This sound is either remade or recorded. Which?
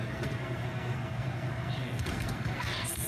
remade